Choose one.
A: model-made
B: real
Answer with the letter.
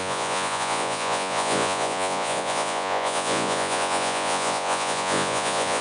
A